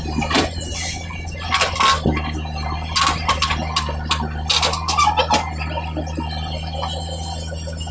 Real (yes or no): yes